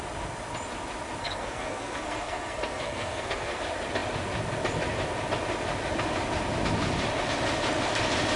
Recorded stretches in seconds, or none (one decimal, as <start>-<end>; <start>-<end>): 0.0-1.2; 3.6-8.4